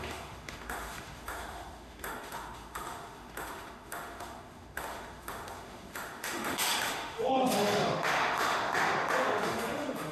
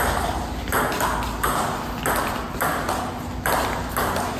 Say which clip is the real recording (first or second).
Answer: second